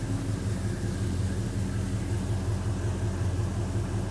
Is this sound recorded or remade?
recorded